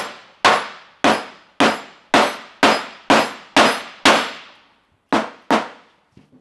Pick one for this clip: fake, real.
real